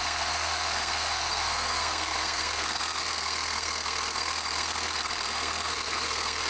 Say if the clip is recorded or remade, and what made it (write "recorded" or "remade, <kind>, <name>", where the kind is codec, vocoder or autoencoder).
remade, codec, SNAC